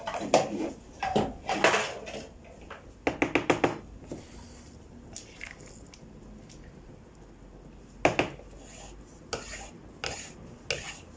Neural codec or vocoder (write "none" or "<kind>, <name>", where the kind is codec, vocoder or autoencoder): none